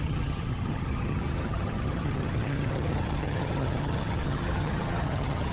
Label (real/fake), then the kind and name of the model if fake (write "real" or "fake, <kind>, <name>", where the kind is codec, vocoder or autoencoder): fake, vocoder, HiFi-GAN